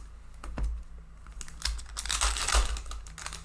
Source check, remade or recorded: recorded